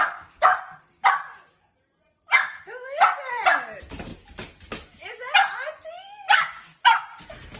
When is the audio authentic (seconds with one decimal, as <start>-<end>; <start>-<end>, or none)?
0.0-7.6